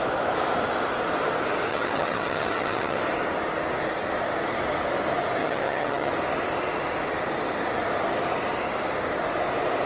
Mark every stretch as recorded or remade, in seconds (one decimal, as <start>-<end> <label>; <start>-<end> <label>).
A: 0.0-1.7 recorded; 1.7-3.0 remade; 3.0-5.4 recorded; 5.4-6.1 remade; 6.1-9.9 recorded